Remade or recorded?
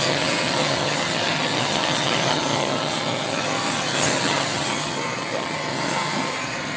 remade